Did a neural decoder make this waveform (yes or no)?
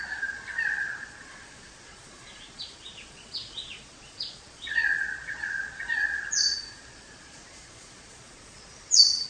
yes